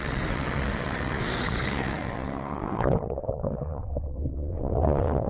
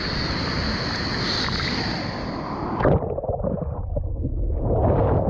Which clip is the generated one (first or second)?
first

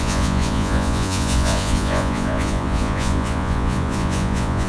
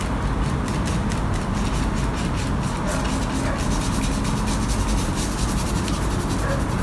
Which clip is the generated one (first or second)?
first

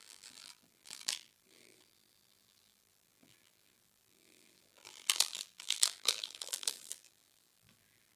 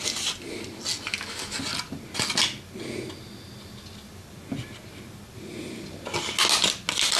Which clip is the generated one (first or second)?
first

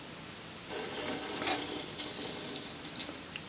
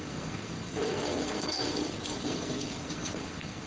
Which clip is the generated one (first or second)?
second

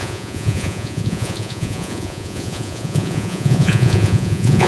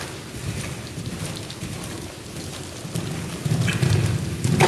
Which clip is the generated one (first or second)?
first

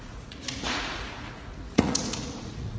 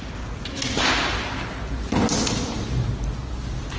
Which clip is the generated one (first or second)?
first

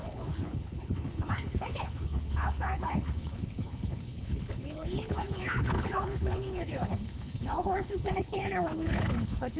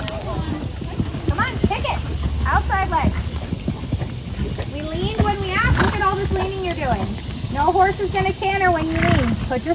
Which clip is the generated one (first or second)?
first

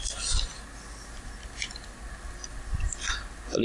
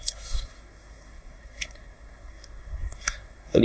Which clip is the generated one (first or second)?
second